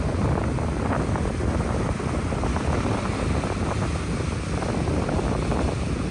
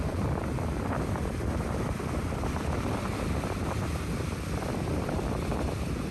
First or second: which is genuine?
first